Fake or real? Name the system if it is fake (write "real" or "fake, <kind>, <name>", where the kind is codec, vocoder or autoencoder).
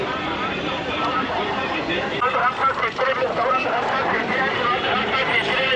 fake, vocoder, BigVGAN v2